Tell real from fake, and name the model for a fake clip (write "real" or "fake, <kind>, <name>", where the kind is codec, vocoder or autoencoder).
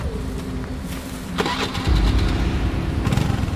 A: real